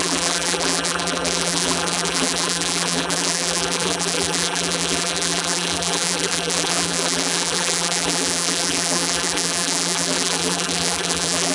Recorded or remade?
remade